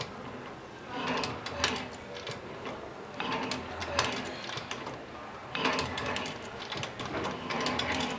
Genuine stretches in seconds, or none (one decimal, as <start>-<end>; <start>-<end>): 0.0-8.2